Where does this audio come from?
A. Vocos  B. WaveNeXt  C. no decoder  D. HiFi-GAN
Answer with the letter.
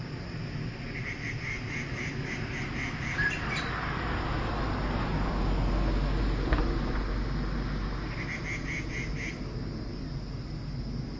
C